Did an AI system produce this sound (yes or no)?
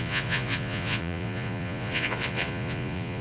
yes